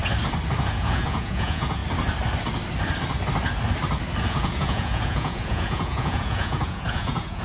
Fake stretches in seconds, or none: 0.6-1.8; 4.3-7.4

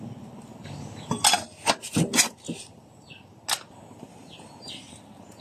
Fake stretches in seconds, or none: 4.1-4.7

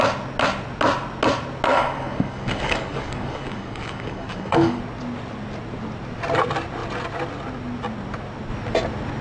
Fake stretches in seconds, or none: 1.7-4.8

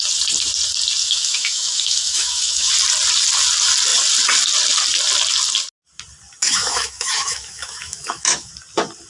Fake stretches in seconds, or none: 1.0-2.7; 6.4-8.5

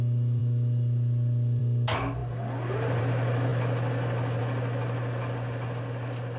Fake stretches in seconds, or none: none

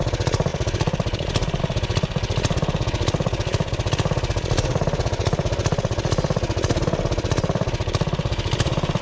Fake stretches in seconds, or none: none

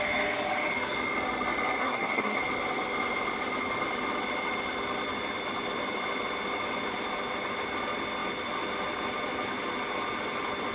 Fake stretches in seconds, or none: 1.8-2.4

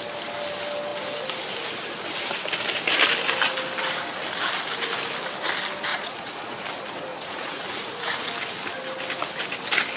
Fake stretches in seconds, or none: 5.9-6.6; 7.1-8.3